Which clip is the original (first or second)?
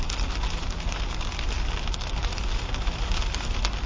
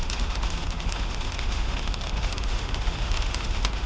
first